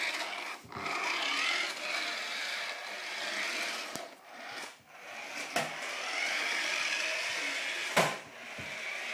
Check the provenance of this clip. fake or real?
real